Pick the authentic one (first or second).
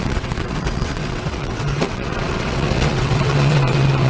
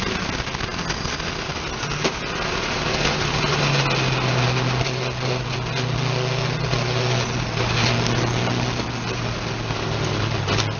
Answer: second